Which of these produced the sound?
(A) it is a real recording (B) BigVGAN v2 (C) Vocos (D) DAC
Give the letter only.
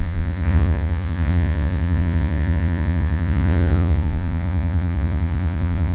C